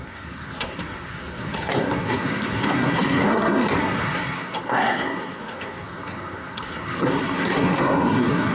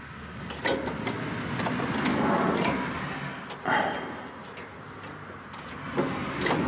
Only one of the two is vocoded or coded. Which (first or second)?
first